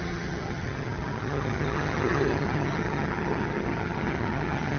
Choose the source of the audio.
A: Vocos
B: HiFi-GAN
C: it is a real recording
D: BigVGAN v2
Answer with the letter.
B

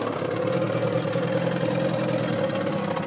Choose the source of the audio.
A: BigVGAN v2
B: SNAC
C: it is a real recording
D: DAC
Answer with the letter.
C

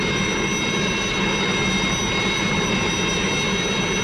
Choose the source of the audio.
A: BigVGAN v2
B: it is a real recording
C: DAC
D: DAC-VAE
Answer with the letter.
B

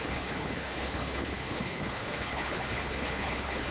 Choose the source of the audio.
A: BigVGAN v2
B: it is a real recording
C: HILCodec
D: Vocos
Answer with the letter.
C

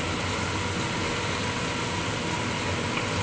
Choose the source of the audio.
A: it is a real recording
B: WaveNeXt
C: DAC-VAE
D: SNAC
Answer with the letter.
A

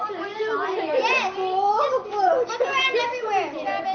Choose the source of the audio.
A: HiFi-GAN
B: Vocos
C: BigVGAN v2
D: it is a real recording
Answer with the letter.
D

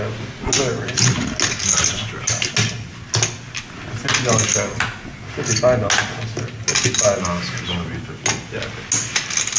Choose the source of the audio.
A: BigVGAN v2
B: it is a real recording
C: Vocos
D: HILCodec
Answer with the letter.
B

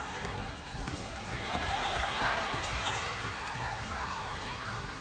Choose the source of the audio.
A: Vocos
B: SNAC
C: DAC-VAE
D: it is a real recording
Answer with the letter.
B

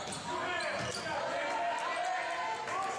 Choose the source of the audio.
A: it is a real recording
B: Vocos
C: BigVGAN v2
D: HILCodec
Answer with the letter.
A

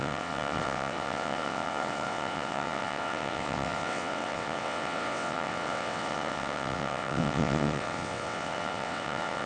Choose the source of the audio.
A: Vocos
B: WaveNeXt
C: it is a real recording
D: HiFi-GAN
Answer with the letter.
B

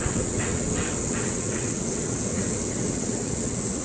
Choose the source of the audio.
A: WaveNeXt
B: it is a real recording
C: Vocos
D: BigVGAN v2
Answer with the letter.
A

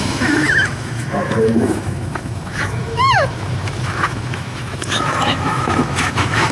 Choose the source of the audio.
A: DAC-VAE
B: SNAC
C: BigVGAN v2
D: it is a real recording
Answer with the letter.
A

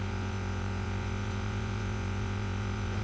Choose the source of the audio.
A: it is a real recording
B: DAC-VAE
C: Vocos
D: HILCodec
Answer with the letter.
C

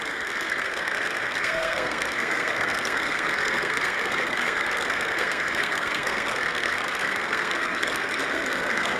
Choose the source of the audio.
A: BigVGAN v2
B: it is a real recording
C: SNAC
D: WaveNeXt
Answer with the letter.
C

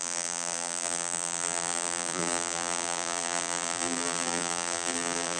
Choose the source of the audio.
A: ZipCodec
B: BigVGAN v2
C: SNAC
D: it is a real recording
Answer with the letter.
B